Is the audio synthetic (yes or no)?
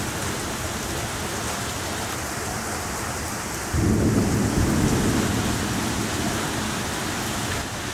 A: no